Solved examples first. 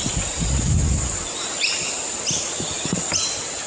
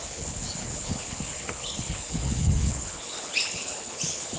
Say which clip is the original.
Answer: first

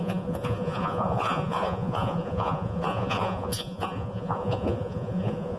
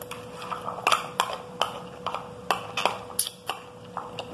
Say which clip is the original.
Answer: second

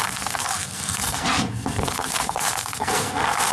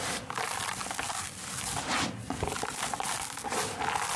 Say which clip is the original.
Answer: second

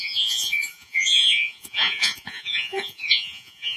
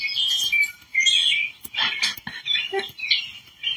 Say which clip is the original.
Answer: second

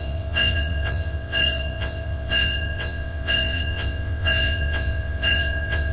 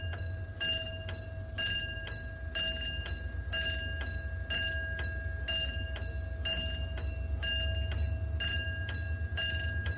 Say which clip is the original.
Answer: second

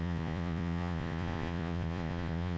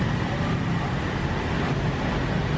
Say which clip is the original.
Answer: second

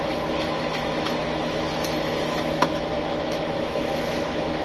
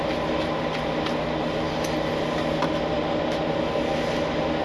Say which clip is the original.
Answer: second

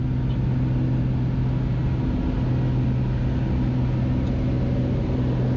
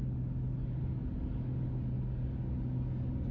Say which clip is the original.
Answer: first